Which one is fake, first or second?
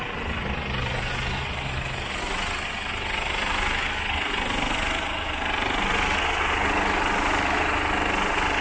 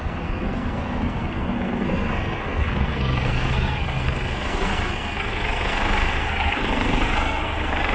second